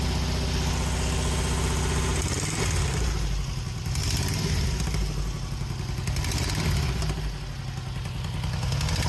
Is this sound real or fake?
real